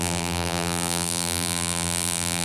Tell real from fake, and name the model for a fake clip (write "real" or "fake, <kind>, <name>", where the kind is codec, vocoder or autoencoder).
fake, vocoder, BigVGAN v2